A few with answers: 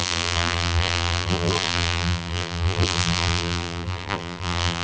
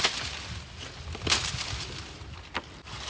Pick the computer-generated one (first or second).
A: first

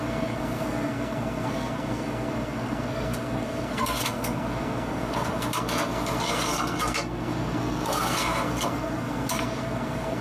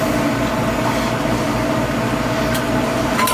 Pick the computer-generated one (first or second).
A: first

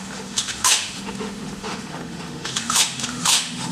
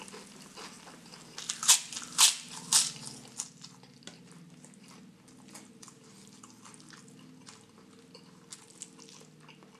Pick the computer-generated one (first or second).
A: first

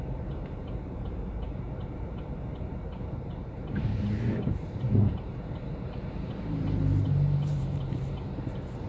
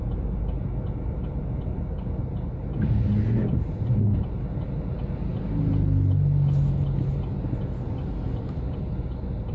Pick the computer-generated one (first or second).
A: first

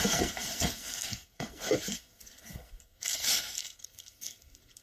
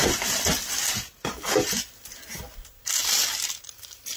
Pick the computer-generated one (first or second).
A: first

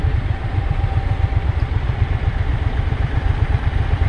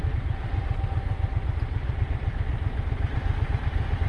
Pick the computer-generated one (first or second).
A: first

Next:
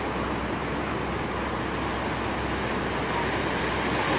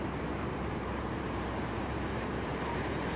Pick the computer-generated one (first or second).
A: second